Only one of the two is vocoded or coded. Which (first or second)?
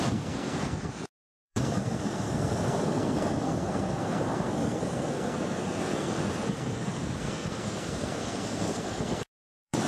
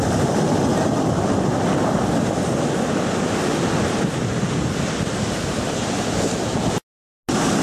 first